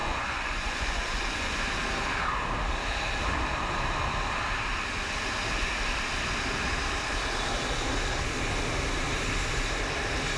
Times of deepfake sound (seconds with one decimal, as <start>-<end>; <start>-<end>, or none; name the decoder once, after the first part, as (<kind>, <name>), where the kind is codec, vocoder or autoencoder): 0.0-1.6 (vocoder, Vocos)